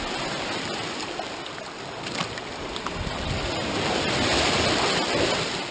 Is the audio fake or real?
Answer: real